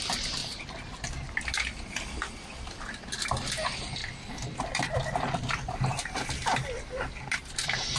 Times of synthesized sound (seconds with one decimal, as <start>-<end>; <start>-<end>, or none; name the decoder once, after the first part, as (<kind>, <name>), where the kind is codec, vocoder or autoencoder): 0.4-1.4 (vocoder, BigVGAN v2)